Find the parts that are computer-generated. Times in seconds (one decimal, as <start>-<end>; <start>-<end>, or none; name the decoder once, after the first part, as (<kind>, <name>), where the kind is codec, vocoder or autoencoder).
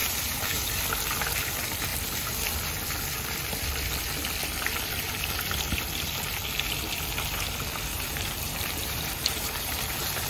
0.0-0.7 (vocoder, BigVGAN v2); 7.9-9.9